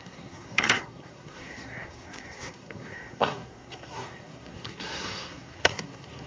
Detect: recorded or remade remade